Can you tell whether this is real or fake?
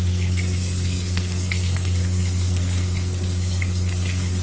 fake